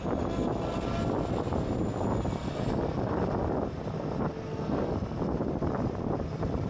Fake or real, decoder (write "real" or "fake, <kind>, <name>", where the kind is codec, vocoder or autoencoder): real